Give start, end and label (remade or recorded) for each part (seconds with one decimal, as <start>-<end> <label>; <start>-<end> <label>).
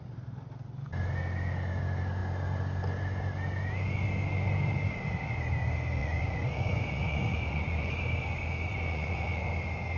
0.0-6.0 recorded; 6.0-7.9 remade; 7.9-8.7 recorded; 8.7-9.5 remade; 9.5-10.0 recorded